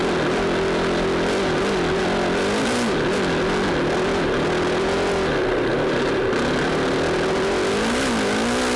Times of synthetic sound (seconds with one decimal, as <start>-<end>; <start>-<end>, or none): none